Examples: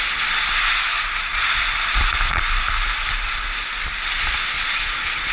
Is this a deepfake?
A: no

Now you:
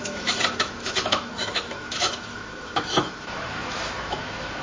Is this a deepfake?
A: yes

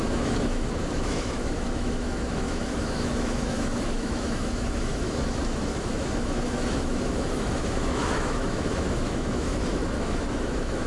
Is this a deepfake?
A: yes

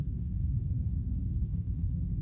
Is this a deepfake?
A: yes